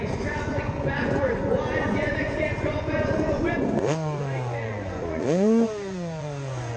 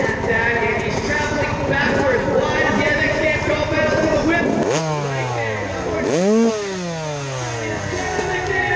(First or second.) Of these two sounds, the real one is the second